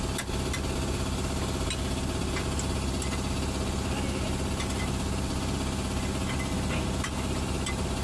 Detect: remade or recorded recorded